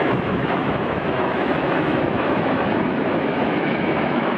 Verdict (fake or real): fake